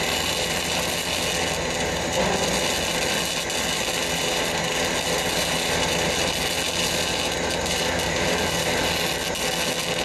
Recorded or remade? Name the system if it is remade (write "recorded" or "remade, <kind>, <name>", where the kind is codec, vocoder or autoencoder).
recorded